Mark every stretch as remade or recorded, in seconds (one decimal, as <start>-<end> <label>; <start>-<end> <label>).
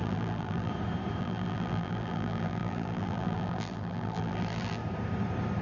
0.0-0.7 remade; 0.7-1.2 recorded; 1.2-4.8 remade; 4.8-5.6 recorded